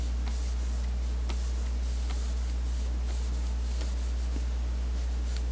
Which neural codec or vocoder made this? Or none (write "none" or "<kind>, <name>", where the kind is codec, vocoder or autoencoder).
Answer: none